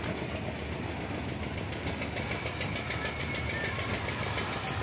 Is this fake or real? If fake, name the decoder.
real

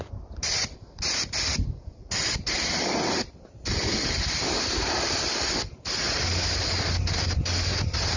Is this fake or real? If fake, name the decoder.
real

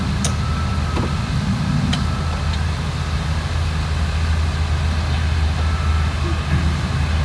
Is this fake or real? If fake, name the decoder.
real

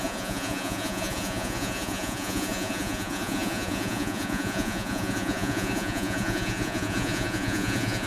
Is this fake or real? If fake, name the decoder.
fake, vocoder, Vocos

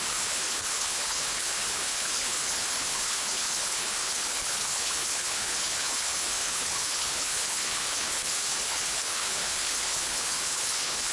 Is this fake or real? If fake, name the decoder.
fake, codec, HILCodec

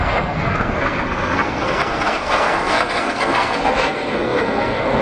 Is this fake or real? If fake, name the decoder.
fake, codec, SNAC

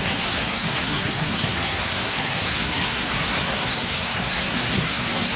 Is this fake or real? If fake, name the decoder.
fake, codec, SNAC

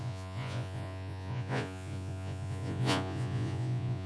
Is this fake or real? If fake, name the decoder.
fake, vocoder, Vocos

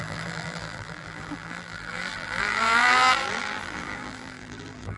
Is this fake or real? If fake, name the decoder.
fake, vocoder, BigVGAN v2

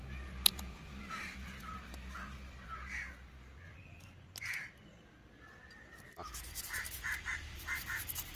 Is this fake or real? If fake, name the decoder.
real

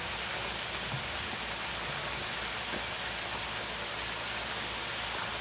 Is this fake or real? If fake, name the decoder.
real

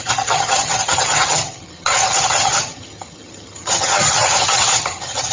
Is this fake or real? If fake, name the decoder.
fake, vocoder, HiFi-GAN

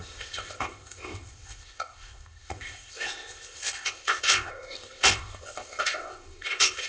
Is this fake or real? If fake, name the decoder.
fake, codec, ZipCodec